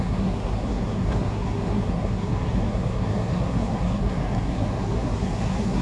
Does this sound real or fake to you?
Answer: fake